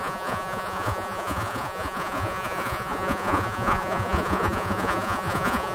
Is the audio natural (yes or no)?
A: no